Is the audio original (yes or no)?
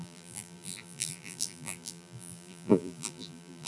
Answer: no